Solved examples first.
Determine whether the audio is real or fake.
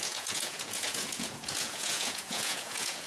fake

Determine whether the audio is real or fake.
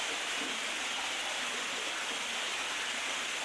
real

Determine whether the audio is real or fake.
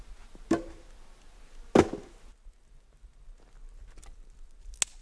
real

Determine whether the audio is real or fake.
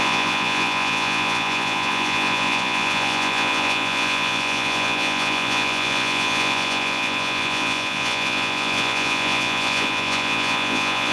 fake